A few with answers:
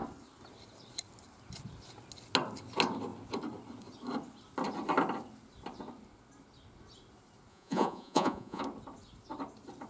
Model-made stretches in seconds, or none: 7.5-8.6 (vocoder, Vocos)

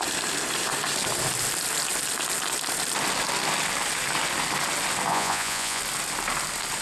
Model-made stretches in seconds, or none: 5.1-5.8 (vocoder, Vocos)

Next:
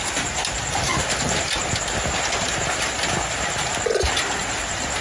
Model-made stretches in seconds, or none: none